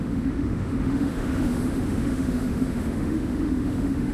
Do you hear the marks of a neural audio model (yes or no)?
yes